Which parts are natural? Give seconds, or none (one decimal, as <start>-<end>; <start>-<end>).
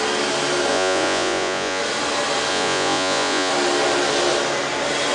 0.0-0.7; 1.8-2.5; 3.5-5.1